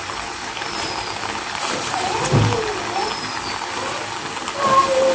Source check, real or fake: real